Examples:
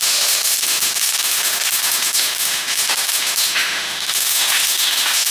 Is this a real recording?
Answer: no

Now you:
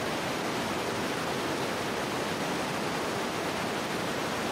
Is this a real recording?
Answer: yes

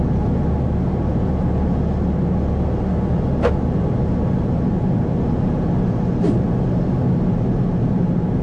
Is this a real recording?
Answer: yes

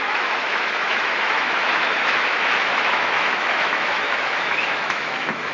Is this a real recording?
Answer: no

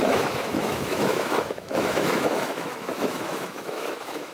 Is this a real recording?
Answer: no